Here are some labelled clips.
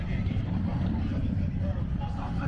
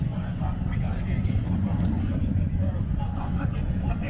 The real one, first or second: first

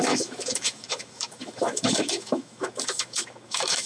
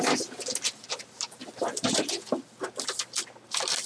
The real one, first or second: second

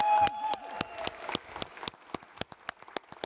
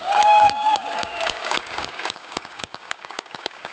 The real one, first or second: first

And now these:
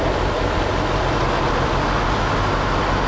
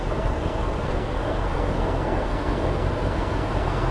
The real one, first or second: first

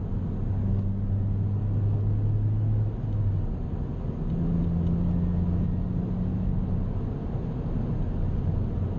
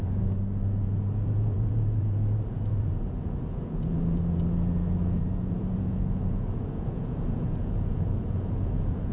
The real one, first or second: first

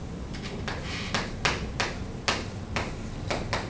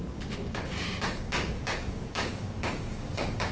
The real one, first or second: first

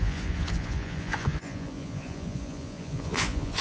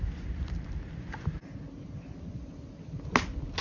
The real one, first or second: second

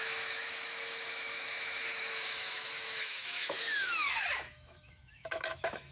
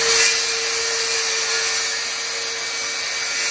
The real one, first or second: second